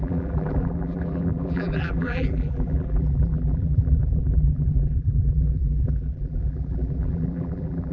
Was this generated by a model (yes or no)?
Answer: yes